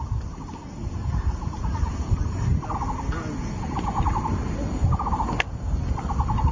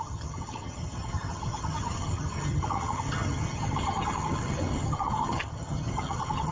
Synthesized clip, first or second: second